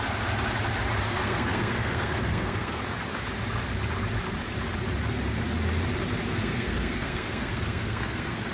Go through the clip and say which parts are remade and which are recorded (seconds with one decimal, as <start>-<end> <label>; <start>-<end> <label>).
0.0-1.2 recorded; 1.2-2.8 remade; 2.8-6.3 recorded; 6.3-8.5 remade